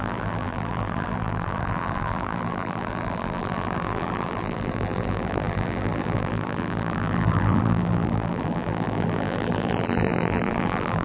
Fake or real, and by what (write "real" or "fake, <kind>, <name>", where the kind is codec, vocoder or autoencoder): fake, vocoder, BigVGAN v2